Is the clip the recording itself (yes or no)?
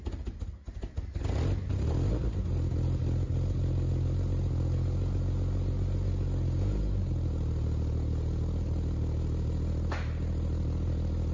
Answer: yes